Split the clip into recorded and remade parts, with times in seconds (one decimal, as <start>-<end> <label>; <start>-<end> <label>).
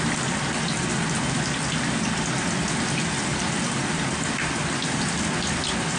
0.0-6.0 recorded